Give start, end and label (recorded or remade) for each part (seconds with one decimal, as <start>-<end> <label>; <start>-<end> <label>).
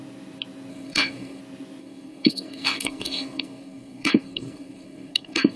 0.0-0.7 recorded; 0.7-1.4 remade; 1.4-1.8 recorded; 1.8-5.6 remade